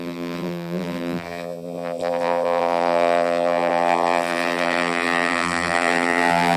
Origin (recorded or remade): remade